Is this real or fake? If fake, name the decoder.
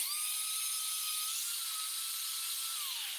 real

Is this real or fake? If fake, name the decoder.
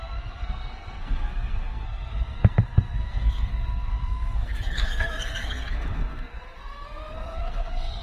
fake, codec, SNAC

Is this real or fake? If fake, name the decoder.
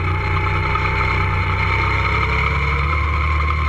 fake, vocoder, BigVGAN v2